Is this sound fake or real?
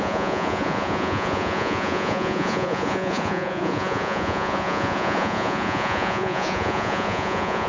fake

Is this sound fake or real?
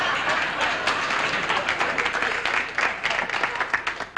real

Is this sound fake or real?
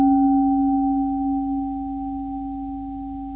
real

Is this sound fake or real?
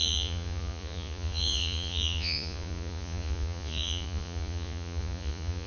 fake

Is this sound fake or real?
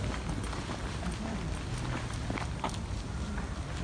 real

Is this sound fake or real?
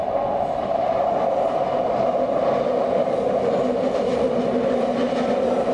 real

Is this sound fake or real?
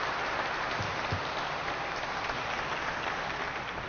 real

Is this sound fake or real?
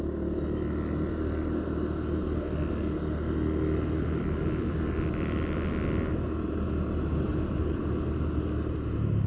real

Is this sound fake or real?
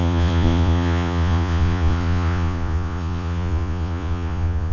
fake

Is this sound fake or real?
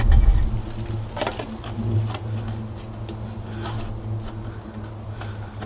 real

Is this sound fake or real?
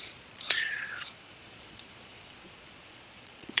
fake